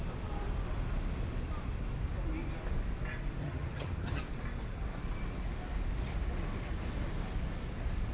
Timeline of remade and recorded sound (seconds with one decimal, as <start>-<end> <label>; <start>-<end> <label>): 0.0-3.4 recorded; 3.4-4.2 remade; 4.2-8.1 recorded